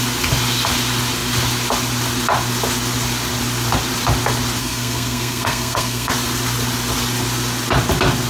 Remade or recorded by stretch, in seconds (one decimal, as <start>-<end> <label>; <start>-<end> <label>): 0.0-4.6 recorded; 4.6-6.1 remade; 6.1-8.3 recorded